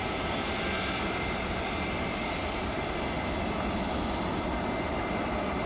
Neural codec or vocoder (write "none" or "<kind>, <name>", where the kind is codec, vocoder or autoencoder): none